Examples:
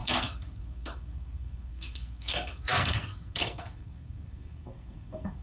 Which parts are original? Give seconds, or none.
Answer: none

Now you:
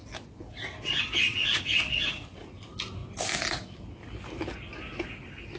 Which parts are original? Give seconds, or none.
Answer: 0.0-5.6

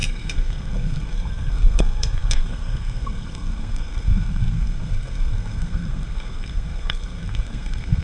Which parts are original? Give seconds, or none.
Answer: none

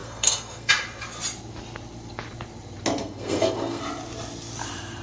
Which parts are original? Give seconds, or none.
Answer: 0.7-3.0; 3.8-5.0

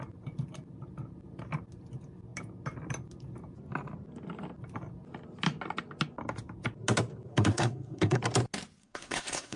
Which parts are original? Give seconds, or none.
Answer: 0.0-7.3; 8.2-8.8

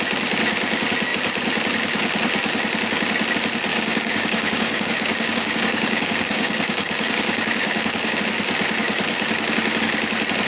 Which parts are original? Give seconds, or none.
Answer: 0.0-3.7; 8.2-10.5

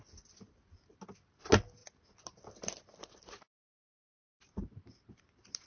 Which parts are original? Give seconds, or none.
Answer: 0.0-5.7